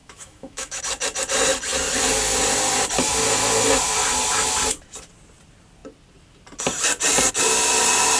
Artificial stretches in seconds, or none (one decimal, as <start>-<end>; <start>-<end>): 0.0-0.8